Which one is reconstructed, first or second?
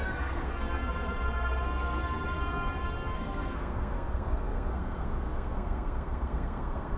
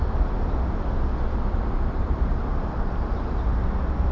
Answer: first